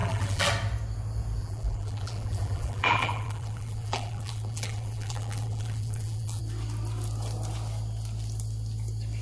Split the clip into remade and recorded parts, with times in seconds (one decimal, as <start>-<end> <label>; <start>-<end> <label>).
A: 0.0-0.5 remade; 0.5-1.4 recorded; 1.4-6.4 remade; 6.4-9.2 recorded